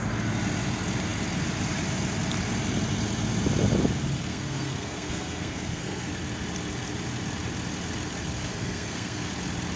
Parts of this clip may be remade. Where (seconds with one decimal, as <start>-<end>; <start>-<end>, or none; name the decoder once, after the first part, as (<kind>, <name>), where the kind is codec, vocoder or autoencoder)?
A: 4.3-6.1 (codec, SNAC); 8.4-9.3